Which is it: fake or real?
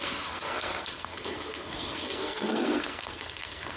fake